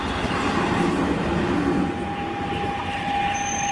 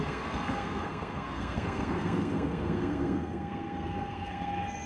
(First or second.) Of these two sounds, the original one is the first